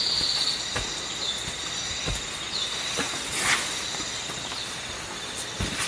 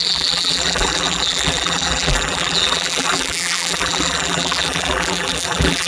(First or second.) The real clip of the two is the first